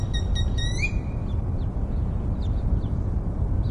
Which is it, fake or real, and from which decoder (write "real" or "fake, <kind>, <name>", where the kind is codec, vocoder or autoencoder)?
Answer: real